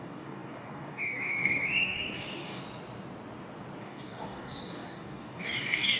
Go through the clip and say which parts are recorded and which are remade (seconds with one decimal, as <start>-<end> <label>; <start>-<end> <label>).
0.0-2.6 remade; 2.6-3.8 recorded; 3.8-6.0 remade